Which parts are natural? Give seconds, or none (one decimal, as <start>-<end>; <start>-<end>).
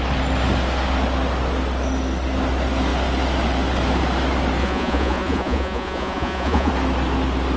0.0-4.6; 6.7-7.6